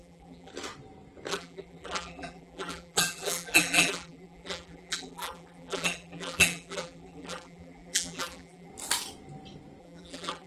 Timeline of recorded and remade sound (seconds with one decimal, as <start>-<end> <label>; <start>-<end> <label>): 0.0-0.5 remade; 0.5-1.3 recorded; 1.3-8.7 remade; 8.7-9.8 recorded; 9.8-10.5 remade